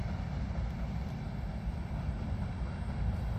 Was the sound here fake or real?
real